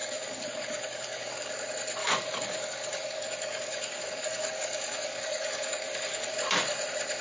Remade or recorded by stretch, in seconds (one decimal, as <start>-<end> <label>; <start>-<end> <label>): 0.0-1.5 remade; 1.5-2.0 recorded; 2.0-6.3 remade; 6.3-7.2 recorded